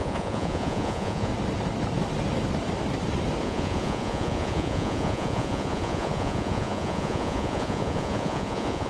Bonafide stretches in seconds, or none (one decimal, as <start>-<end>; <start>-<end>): 1.3-3.4